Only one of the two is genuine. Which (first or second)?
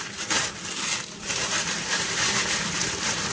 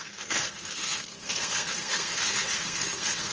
first